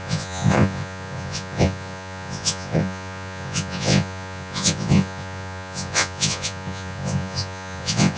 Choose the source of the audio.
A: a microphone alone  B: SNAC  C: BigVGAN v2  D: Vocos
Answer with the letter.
D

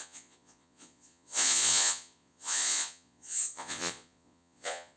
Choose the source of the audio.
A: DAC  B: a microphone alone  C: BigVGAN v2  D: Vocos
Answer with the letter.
D